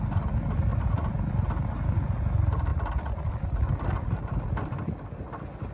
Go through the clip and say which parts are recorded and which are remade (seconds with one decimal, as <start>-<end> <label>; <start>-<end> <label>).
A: 0.0-0.7 recorded; 0.7-1.3 remade; 1.3-5.7 recorded